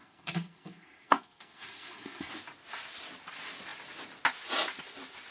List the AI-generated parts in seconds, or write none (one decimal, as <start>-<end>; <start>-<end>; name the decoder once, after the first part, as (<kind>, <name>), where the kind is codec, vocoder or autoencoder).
0.0-2.3 (codec, SNAC)